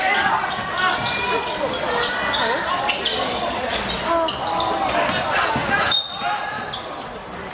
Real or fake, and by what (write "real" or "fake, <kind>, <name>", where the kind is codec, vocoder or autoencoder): real